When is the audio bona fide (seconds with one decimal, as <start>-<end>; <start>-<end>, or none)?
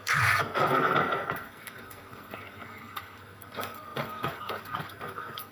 none